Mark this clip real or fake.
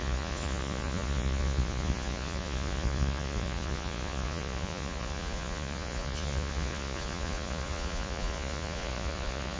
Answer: fake